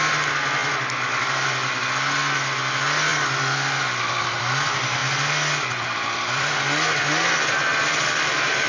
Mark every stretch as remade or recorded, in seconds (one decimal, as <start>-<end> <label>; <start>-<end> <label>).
0.0-0.6 recorded; 0.6-1.8 remade; 1.8-3.1 recorded; 3.1-4.0 remade; 4.0-5.0 recorded; 5.0-6.6 remade; 6.6-7.7 recorded; 7.7-8.7 remade